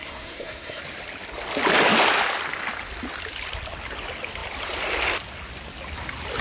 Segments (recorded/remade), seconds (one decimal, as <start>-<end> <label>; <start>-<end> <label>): 0.0-0.8 remade; 0.8-6.4 recorded